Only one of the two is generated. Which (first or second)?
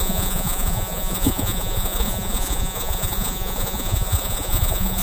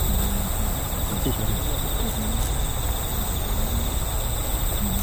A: first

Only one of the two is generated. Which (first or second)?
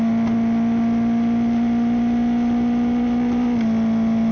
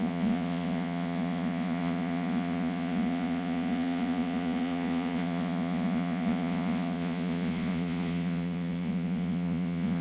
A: second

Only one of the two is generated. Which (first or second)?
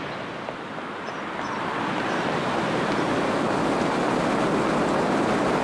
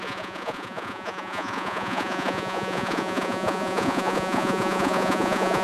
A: second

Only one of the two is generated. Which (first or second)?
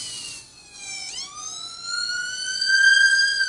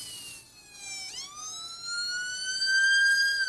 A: first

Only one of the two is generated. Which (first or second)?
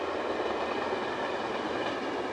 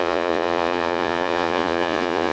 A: second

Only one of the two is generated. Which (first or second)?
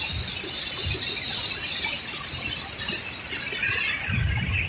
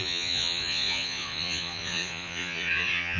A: second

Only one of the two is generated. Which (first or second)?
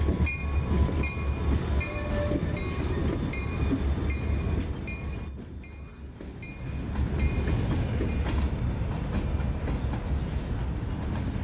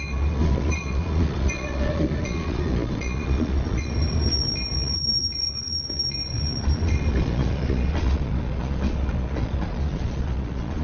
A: second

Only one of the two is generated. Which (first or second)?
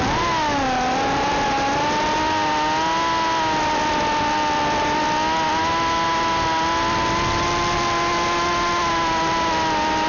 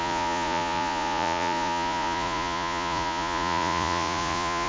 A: second